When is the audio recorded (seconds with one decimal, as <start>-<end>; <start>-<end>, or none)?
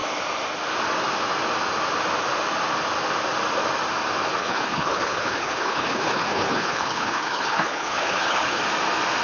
0.0-4.4; 8.6-9.2